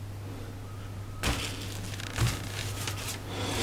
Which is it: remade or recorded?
recorded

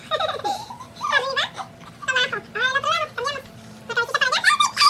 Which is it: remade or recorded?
remade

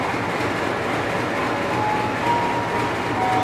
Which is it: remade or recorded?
recorded